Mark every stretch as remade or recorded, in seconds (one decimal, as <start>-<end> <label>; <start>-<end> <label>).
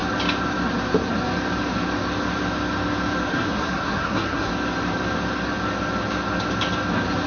0.0-3.3 recorded; 3.3-4.5 remade; 4.5-7.3 recorded